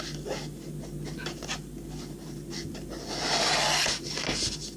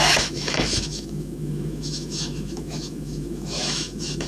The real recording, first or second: first